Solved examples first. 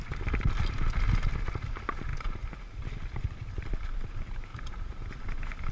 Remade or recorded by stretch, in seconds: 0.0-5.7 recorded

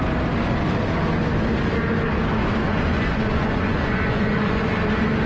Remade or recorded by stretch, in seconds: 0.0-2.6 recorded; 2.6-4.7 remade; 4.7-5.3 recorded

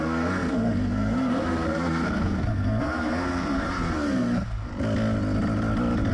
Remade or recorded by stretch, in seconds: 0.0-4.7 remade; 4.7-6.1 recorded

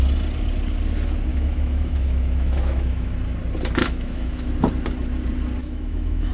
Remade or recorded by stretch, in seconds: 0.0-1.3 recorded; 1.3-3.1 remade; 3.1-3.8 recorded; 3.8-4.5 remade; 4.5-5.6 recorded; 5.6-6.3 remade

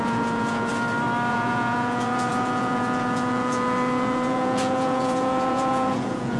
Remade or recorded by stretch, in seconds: 0.0-0.7 remade; 0.7-1.3 recorded; 1.3-6.4 remade